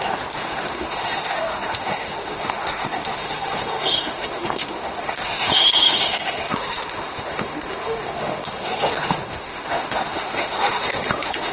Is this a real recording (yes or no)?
no